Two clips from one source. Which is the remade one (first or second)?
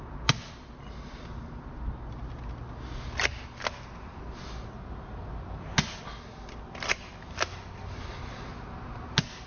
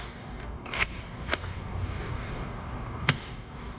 second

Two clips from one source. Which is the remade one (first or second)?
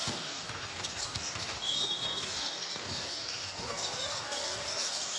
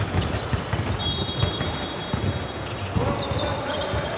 first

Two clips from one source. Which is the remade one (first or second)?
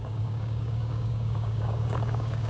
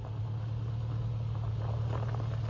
first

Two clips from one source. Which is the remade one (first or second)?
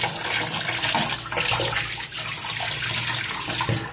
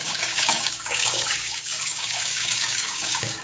second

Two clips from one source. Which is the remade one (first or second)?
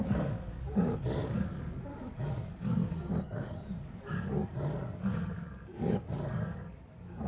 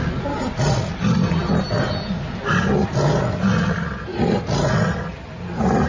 first